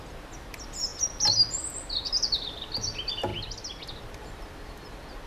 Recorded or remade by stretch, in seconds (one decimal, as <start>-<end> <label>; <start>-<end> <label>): 0.0-5.3 recorded